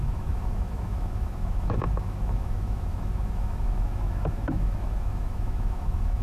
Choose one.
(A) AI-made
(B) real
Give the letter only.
A